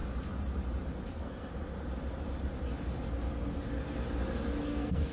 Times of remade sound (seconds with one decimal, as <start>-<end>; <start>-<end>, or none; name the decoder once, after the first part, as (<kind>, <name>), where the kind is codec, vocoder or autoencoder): 1.1-1.5 (codec, SNAC); 4.6-5.1